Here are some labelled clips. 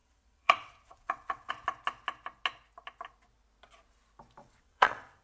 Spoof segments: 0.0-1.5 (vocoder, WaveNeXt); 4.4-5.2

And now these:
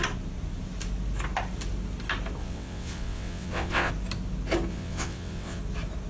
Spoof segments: 2.4-3.9 (vocoder, WaveNeXt); 4.7-5.6

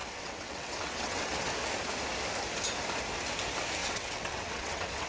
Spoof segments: 0.0-1.5 (vocoder, WaveNeXt); 3.8-5.1

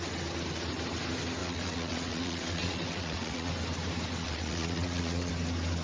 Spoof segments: 1.4-3.5 (vocoder, WaveNeXt); 4.2-5.3

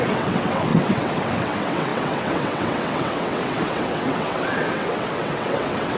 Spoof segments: 0.0-6.0 (vocoder, WaveNeXt)

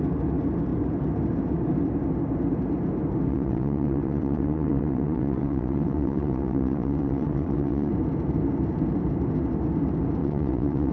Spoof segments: 3.3-7.9 (vocoder, WaveNeXt); 10.2-10.9

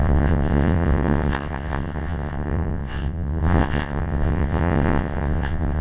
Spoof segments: 0.0-5.8 (vocoder, WaveNeXt)

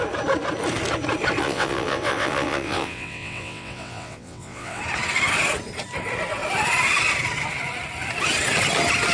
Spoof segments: 1.4-4.8 (vocoder, WaveNeXt)